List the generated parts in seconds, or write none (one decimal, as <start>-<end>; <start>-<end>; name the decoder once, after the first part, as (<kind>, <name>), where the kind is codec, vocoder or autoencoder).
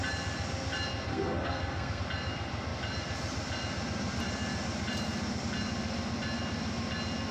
1.1-2.0 (codec, SNAC)